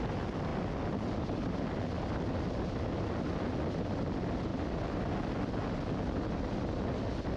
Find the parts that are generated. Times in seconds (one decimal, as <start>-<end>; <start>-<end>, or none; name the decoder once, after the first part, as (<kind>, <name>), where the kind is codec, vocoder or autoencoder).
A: none